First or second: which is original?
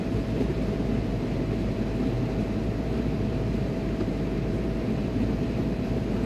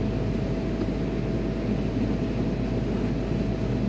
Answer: second